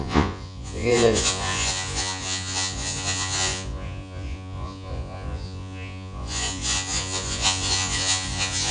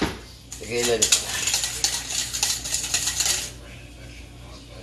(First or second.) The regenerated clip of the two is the first